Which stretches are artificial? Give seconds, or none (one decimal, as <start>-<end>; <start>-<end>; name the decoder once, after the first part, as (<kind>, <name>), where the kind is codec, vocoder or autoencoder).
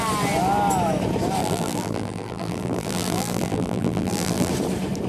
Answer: 1.4-4.5 (vocoder, BigVGAN v2)